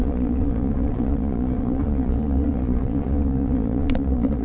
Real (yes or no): no